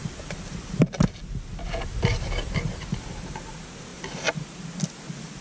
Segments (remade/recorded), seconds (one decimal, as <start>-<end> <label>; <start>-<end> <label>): 0.0-5.4 recorded